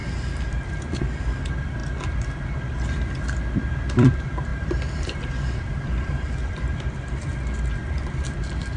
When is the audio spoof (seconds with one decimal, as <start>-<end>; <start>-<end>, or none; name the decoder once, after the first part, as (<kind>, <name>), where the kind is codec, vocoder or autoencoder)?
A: 0.8-1.8 (vocoder, BigVGAN v2); 3.9-7.3; 8.0-8.8